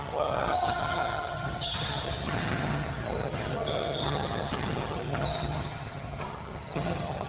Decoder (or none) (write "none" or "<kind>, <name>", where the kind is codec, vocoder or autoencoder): vocoder, HiFi-GAN